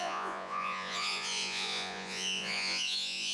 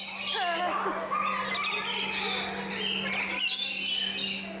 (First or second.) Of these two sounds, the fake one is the first